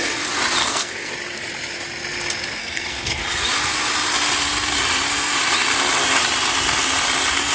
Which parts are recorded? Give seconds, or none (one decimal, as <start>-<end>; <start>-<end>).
0.0-0.6; 1.1-2.6; 3.2-7.5